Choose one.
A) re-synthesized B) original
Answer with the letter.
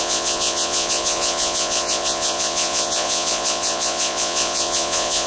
A